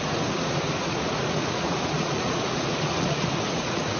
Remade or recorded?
remade